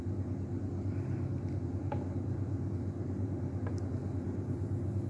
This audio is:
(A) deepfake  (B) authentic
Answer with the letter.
B